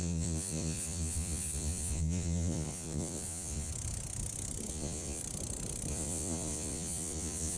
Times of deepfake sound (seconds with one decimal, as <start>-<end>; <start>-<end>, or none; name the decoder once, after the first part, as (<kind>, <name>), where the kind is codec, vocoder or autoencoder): 0.0-3.7 (vocoder, Vocos); 4.7-5.2; 5.9-7.6